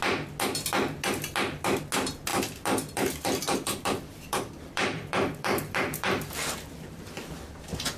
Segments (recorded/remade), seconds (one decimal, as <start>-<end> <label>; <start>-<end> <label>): 0.0-2.3 recorded; 2.3-6.3 remade; 6.3-8.0 recorded